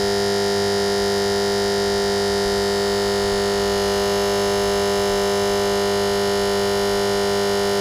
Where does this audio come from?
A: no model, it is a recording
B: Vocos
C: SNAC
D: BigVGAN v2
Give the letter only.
A